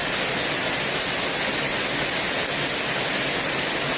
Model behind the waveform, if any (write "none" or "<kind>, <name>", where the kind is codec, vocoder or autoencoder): none